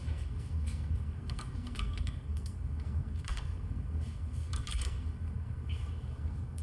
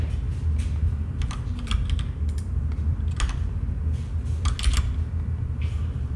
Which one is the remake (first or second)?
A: first